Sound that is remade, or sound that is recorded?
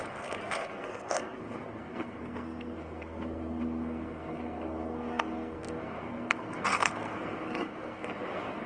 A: remade